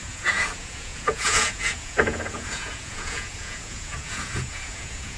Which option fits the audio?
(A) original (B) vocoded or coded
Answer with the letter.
B